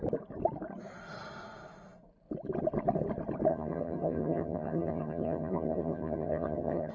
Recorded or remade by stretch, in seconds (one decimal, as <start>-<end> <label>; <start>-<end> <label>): 0.0-3.5 recorded; 3.5-6.9 remade